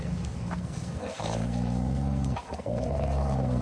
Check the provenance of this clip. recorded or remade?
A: remade